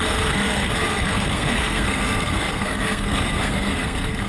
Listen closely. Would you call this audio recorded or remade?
remade